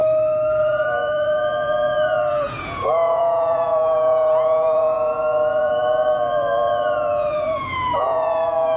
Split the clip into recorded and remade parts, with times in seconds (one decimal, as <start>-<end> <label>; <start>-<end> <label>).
0.0-0.6 recorded; 0.6-8.8 remade

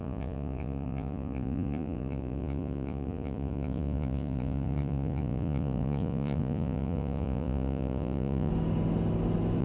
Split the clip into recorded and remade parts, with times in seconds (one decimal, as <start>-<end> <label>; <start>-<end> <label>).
0.0-8.5 remade; 8.5-9.6 recorded